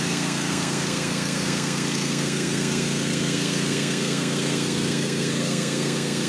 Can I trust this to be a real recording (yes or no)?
no